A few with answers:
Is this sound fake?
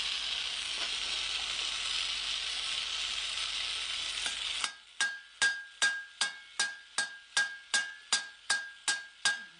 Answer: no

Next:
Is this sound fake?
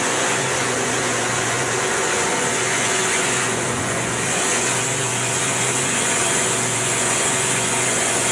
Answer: yes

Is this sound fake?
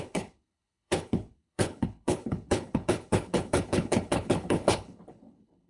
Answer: yes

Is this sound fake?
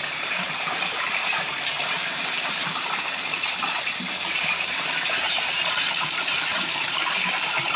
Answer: yes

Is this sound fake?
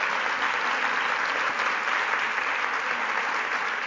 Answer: no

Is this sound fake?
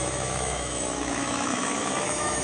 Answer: yes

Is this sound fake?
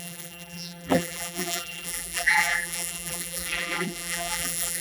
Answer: yes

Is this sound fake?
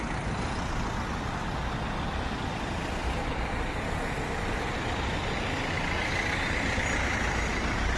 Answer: yes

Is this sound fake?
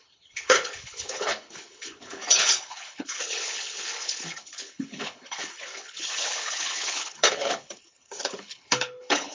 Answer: yes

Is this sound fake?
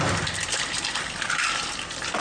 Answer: yes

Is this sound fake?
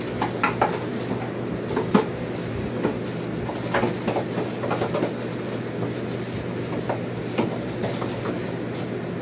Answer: no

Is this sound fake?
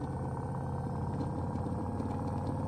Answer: no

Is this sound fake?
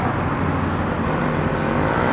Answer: no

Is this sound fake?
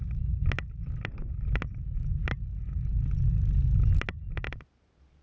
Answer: no